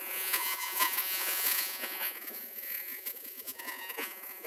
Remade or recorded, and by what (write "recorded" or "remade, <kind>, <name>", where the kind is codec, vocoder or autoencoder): remade, vocoder, Vocos